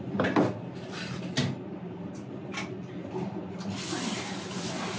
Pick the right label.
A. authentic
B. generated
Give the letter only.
A